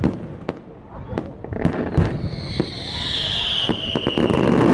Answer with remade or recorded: recorded